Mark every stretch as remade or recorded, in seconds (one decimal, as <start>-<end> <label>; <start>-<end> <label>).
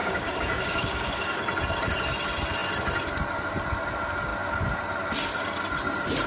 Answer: 0.0-1.4 remade; 1.4-6.3 recorded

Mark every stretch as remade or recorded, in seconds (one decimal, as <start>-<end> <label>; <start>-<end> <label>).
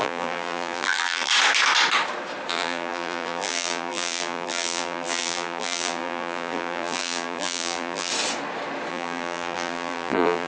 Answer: 0.0-1.3 remade; 1.3-2.5 recorded; 2.5-8.1 remade; 8.1-8.9 recorded; 8.9-10.5 remade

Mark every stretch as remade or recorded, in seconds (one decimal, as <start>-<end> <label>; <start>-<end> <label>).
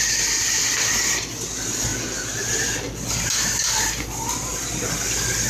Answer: 0.0-5.5 recorded